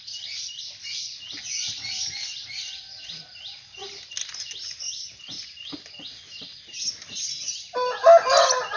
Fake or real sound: real